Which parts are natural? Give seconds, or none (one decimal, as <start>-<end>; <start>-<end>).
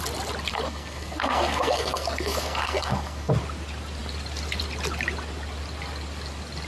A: 0.0-0.5; 3.3-6.7